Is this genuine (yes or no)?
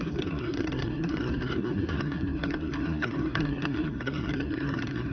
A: no